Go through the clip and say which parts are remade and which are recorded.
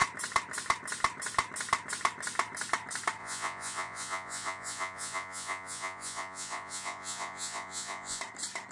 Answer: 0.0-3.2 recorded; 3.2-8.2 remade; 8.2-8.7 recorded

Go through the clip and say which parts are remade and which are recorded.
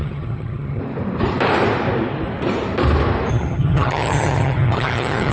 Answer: 0.0-0.8 remade; 0.8-3.3 recorded; 3.3-5.3 remade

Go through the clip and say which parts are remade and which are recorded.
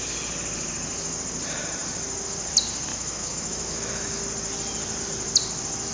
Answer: 0.0-2.9 recorded; 2.9-4.2 remade; 4.2-5.9 recorded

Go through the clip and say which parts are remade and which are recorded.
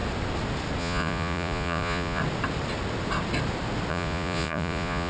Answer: 0.0-0.8 recorded; 0.8-2.2 remade; 2.2-3.9 recorded; 3.9-5.1 remade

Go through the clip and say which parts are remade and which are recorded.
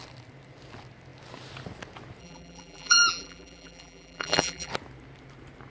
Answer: 0.0-2.2 recorded; 2.2-4.7 remade; 4.7-5.7 recorded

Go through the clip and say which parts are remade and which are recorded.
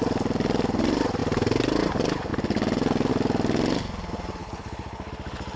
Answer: 0.0-4.4 recorded; 4.4-5.1 remade; 5.1-5.6 recorded